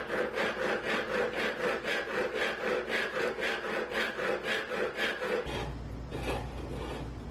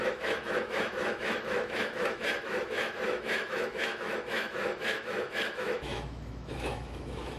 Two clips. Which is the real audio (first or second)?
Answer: first